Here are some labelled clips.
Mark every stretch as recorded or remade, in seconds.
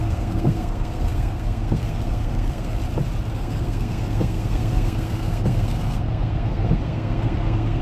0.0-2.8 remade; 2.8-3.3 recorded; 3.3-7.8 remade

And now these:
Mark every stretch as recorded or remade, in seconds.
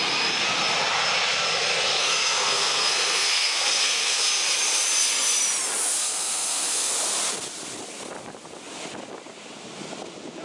0.0-2.0 recorded; 2.0-4.2 remade; 4.2-6.0 recorded; 6.0-6.9 remade; 6.9-10.4 recorded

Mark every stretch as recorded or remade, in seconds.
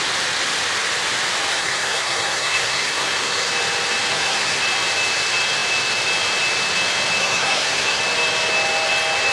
0.0-1.5 recorded; 1.5-3.5 remade; 3.5-4.1 recorded; 4.1-4.6 remade; 4.6-7.2 recorded; 7.2-8.0 remade; 8.0-9.3 recorded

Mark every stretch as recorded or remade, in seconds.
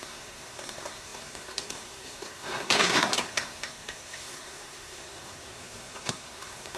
0.0-6.8 remade